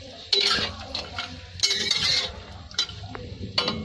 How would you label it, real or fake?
fake